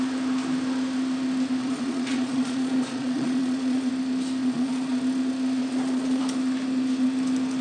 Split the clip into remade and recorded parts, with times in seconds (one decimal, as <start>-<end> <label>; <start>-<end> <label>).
0.0-1.6 recorded; 1.6-3.9 remade; 3.9-4.4 recorded; 4.4-5.0 remade; 5.0-5.6 recorded; 5.6-6.2 remade; 6.2-7.6 recorded